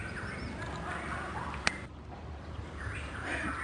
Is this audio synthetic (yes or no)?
no